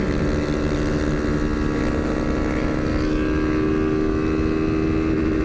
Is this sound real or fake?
real